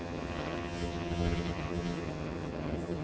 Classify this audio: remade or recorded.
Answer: remade